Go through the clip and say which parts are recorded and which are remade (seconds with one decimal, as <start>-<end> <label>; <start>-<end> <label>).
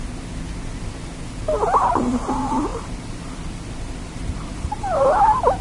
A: 0.0-2.7 recorded; 2.7-4.8 remade; 4.8-5.6 recorded